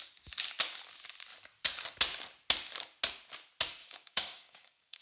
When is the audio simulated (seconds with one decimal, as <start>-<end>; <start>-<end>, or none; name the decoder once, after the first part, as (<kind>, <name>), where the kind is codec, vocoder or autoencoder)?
3.8-5.0 (codec, DAC)